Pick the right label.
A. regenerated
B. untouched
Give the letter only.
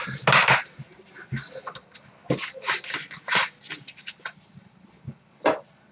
B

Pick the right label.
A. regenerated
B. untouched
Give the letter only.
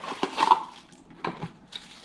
A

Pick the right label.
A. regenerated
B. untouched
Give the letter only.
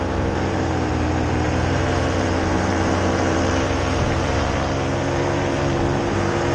A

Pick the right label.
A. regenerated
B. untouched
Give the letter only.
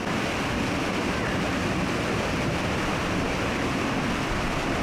B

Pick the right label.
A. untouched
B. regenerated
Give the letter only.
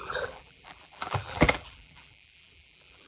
B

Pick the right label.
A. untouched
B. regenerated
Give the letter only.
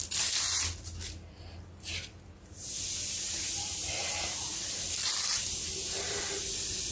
A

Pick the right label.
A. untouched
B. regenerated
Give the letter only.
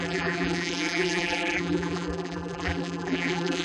B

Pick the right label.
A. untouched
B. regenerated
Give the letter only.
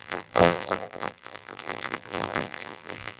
B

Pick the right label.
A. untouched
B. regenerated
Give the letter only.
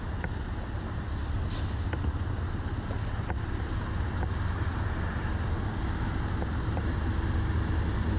A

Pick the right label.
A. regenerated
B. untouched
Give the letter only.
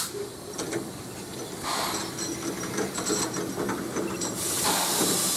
B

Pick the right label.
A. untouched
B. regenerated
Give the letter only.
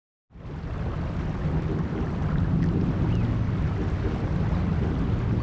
A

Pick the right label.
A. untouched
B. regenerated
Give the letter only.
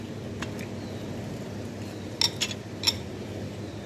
A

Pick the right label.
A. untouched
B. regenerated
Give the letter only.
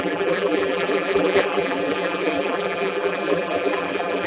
B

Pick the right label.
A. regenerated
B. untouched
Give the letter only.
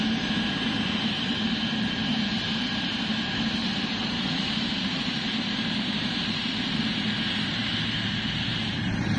A